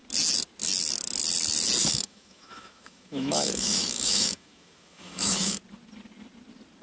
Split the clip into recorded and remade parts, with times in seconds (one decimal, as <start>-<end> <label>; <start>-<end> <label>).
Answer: 0.0-1.8 recorded; 1.8-5.6 remade; 5.6-6.8 recorded